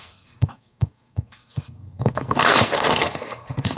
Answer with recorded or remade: remade